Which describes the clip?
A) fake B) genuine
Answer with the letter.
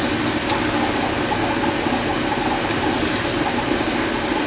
B